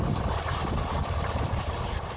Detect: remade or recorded recorded